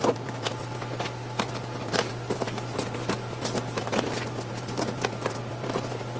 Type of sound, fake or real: real